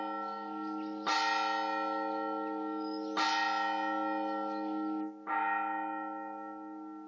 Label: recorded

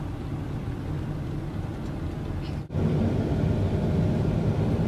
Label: recorded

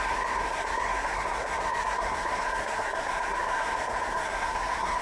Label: remade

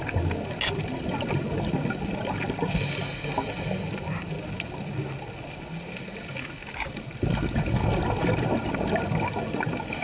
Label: recorded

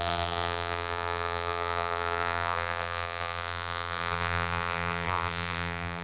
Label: remade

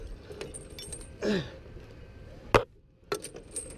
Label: recorded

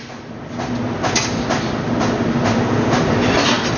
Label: recorded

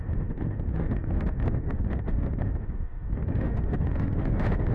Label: remade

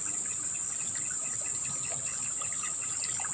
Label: recorded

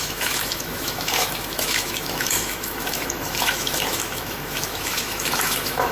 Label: remade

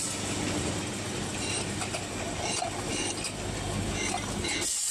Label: recorded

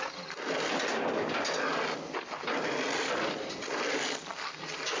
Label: recorded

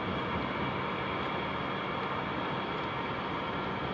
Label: recorded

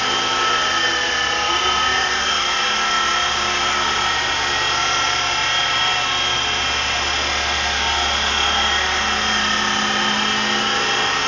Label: recorded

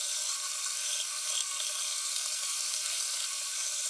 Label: remade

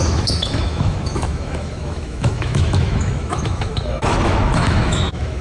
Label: remade